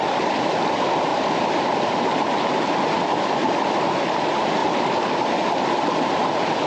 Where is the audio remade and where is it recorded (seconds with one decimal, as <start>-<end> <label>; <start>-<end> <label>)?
0.0-6.7 recorded